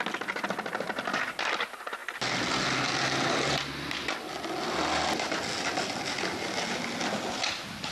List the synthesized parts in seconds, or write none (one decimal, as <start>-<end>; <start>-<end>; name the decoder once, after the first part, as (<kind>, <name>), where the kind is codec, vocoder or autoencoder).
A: none